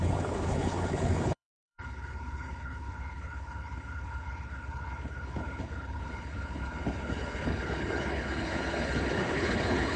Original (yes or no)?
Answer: no